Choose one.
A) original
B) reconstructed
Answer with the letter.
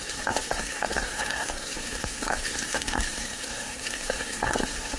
B